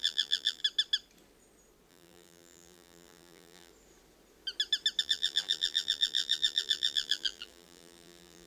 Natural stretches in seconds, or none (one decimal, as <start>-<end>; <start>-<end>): 0.6-1.9; 3.7-5.0